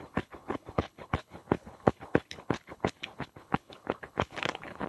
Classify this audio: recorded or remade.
remade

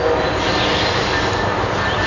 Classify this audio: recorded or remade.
recorded